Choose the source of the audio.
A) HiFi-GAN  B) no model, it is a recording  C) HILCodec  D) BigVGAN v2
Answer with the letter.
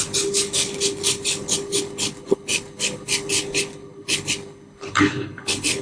C